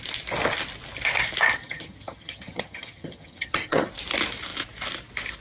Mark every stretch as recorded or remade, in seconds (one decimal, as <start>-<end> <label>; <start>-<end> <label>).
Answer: 0.0-1.6 recorded; 1.6-3.9 remade; 3.9-5.4 recorded